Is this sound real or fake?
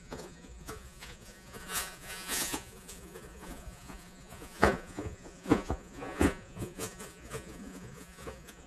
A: fake